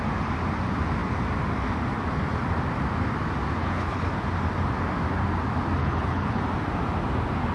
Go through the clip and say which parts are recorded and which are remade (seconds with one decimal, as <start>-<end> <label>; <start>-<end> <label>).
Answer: 0.0-3.6 recorded; 3.6-4.1 remade; 4.1-5.8 recorded; 5.8-6.4 remade; 6.4-7.5 recorded